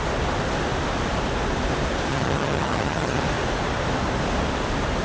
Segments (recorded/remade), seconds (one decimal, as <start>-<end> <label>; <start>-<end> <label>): 0.0-2.1 recorded; 2.1-3.2 remade; 3.2-5.0 recorded